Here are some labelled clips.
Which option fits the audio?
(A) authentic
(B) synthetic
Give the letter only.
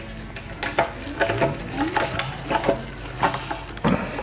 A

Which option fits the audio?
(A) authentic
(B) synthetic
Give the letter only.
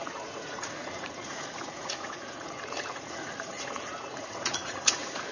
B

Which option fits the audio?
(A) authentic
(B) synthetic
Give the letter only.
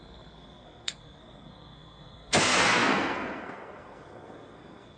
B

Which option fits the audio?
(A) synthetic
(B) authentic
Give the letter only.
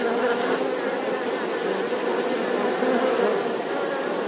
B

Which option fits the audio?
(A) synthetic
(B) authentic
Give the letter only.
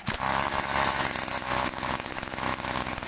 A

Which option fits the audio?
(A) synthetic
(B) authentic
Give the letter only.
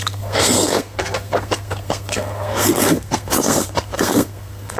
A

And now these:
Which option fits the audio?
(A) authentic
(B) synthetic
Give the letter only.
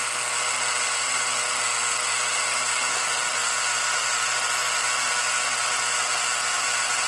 A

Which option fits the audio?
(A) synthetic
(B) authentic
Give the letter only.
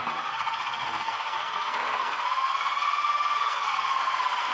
A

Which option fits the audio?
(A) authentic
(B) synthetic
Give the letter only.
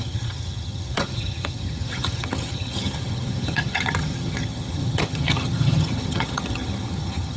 B